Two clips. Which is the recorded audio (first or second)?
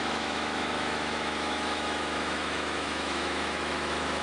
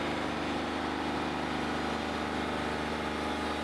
second